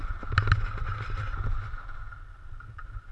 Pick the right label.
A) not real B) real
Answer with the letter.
B